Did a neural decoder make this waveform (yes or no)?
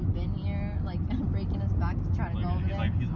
no